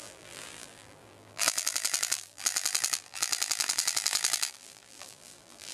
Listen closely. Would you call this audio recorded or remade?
remade